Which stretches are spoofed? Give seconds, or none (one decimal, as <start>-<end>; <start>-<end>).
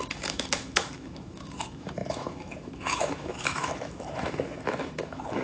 0.0-5.4